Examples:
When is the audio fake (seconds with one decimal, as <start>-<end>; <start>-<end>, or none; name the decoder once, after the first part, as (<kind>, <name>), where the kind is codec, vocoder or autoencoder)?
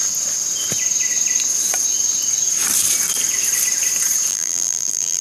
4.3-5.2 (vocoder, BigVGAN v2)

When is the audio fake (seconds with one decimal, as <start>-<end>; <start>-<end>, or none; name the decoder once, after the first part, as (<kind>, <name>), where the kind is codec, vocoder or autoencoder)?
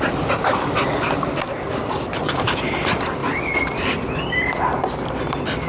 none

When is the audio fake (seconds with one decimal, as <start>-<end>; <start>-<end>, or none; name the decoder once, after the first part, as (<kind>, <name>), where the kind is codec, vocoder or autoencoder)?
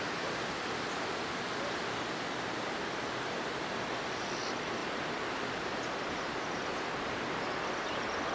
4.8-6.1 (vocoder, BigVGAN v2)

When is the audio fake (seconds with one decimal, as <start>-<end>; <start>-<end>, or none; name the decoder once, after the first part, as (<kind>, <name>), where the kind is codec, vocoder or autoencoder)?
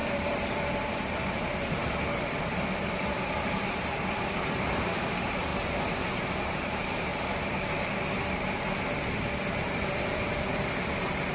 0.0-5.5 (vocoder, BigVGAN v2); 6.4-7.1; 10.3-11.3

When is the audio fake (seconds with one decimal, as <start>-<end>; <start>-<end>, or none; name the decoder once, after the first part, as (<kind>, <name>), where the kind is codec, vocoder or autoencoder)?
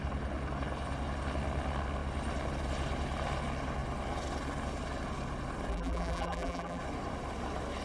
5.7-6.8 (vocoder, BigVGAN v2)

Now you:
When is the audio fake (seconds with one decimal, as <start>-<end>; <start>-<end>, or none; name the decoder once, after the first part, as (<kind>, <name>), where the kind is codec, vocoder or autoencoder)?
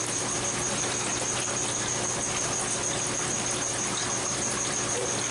none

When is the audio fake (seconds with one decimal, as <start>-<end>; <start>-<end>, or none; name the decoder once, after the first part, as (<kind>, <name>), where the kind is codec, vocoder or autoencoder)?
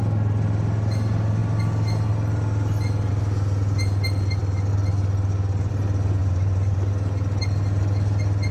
6.2-6.9 (vocoder, BigVGAN v2)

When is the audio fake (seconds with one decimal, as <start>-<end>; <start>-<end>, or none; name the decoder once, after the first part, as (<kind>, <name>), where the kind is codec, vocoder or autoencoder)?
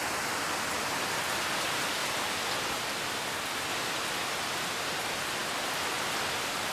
none